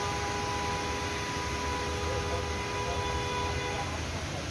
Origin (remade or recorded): recorded